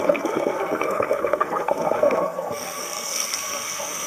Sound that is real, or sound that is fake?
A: fake